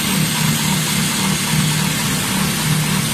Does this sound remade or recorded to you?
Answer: recorded